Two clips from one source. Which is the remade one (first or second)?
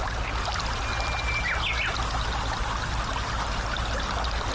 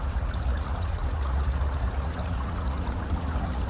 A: second